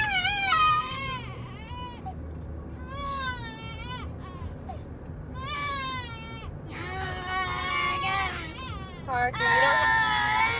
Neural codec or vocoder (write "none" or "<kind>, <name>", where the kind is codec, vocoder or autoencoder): none